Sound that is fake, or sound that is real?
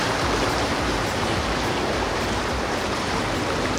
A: fake